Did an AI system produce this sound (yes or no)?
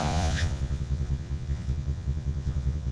yes